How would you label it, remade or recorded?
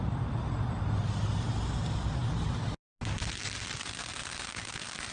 recorded